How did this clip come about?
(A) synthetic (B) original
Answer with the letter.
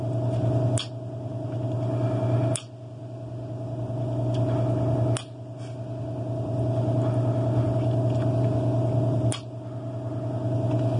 B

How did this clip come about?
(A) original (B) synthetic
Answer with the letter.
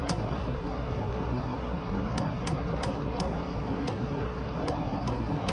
B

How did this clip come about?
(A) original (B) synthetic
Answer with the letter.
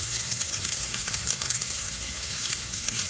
B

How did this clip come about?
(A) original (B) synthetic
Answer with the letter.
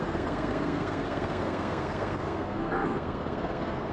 B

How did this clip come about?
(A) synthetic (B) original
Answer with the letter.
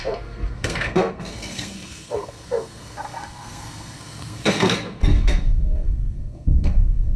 A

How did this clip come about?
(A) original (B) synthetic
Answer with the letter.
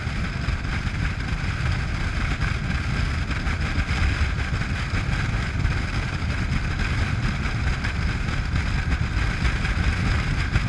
A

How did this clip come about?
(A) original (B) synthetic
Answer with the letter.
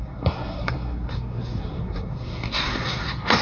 B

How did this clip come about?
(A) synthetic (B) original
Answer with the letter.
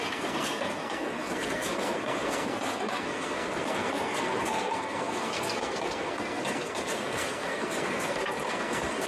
A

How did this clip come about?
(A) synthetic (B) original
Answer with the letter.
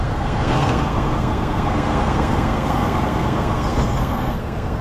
A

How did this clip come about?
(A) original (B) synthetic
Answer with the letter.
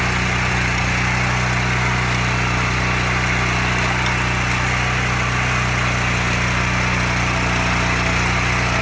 A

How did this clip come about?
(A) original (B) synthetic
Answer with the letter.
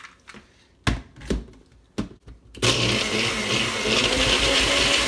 A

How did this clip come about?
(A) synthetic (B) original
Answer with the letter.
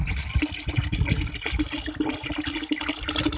B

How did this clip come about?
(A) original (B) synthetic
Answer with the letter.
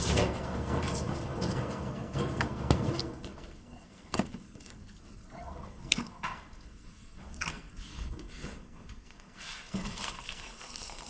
B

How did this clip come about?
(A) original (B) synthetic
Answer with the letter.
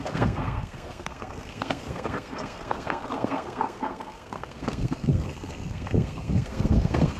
B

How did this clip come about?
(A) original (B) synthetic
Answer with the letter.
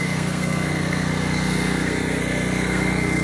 B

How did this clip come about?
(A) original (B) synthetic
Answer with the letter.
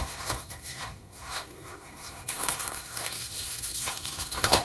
B